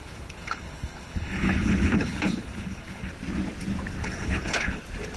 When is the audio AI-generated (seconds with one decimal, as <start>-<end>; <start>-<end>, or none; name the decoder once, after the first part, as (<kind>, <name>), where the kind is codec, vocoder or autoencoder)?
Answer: 0.0-3.1 (codec, HILCodec); 4.0-4.8